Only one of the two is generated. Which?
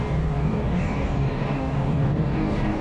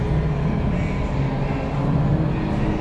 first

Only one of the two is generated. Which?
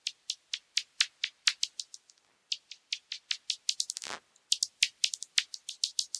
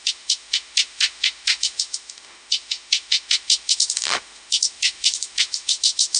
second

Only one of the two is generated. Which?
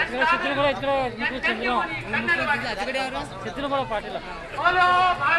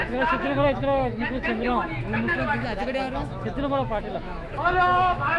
second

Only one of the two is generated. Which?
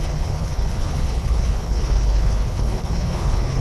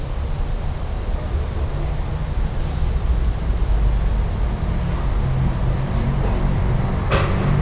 first